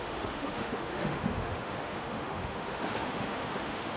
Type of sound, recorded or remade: remade